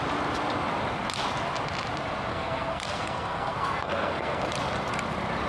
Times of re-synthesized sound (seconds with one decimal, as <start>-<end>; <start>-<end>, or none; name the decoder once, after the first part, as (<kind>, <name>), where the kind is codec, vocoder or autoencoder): 2.3-4.4 (codec, SNAC)